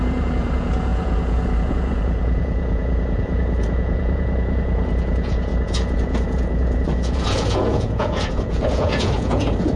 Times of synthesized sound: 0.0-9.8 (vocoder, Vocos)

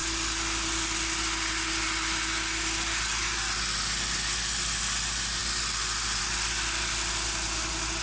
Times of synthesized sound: none